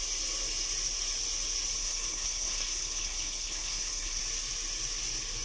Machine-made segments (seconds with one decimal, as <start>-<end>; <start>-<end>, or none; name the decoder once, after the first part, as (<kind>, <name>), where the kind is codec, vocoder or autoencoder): 1.8-4.2 (codec, HILCodec)